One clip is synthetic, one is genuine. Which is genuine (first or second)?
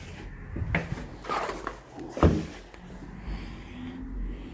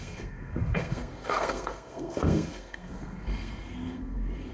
first